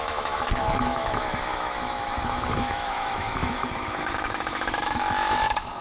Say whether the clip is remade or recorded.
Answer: remade